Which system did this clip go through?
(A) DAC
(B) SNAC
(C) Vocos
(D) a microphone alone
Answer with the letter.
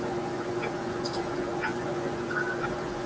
C